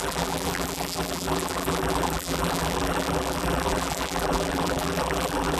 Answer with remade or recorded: remade